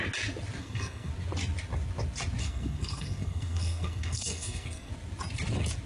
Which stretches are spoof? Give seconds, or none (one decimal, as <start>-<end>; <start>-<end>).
0.6-1.1; 2.4-4.9